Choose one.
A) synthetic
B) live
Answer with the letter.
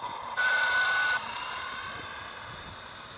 A